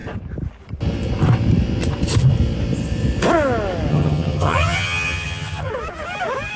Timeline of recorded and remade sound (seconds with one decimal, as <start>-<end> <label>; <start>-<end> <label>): 0.0-3.9 recorded; 3.9-5.7 remade; 5.7-6.6 recorded